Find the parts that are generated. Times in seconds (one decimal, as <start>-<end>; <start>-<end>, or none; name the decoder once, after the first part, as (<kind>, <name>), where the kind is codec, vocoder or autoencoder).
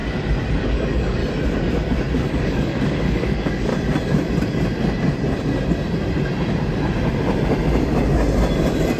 0.5-1.2 (codec, DAC); 2.3-3.7